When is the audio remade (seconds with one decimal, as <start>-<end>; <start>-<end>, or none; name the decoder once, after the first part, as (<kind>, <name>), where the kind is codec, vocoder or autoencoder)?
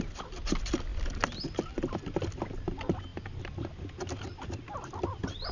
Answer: none